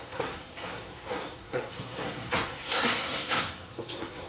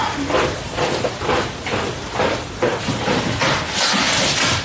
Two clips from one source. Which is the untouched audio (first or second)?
second